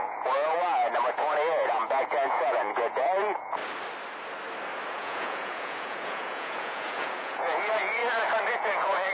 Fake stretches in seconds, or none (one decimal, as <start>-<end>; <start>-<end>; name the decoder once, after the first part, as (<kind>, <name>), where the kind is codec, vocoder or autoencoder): 0.0-3.6 (vocoder, Vocos); 4.9-8.0; 8.5-9.1